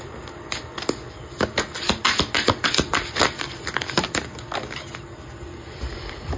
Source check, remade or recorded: recorded